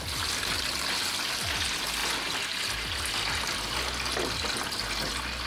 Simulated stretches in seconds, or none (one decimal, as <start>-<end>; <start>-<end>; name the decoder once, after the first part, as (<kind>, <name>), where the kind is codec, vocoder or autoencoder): none

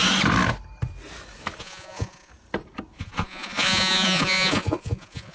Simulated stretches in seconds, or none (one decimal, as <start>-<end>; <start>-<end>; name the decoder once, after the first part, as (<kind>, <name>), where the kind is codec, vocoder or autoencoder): 1.6-2.3 (vocoder, Vocos); 3.0-5.3

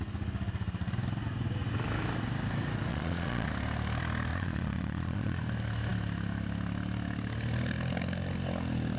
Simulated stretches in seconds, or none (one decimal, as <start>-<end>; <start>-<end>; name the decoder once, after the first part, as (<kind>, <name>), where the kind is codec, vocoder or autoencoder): 2.9-3.5 (vocoder, Vocos); 4.3-5.4

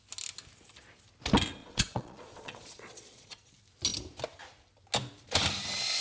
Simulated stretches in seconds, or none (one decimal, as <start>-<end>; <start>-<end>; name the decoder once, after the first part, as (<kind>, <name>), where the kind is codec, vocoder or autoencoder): 1.6-3.5 (vocoder, Vocos)

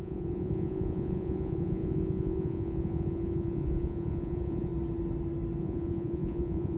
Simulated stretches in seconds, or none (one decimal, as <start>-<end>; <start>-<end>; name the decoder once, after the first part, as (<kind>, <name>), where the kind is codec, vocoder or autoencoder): 0.0-4.7 (vocoder, Vocos); 5.6-6.8

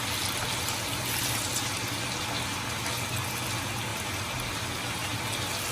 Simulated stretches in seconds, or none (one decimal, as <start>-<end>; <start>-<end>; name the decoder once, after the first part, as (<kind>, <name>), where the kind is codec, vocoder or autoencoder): none